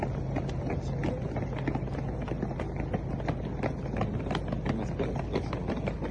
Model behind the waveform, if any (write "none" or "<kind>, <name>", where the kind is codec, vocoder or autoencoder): none